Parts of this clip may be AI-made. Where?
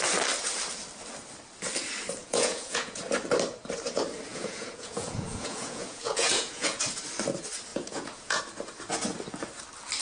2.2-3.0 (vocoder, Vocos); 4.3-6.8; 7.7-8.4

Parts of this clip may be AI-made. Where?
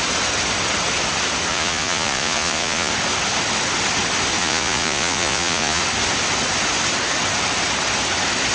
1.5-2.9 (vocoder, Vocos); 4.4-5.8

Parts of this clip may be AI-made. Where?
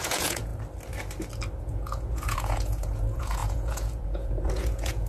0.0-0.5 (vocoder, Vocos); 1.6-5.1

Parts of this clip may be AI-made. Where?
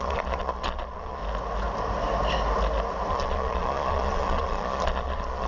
0.0-1.2 (vocoder, Vocos); 3.1-5.5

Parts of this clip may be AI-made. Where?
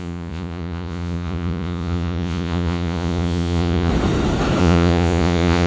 0.0-3.9 (vocoder, Vocos); 4.6-5.7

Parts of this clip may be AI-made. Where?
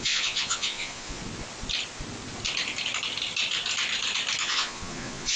0.0-1.2 (vocoder, Vocos); 4.4-5.4